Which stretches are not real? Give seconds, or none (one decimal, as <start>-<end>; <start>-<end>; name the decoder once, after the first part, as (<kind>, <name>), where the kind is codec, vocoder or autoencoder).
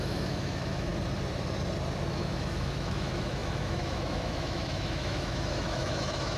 0.0-0.9 (autoencoder, DAC-VAE); 2.1-6.4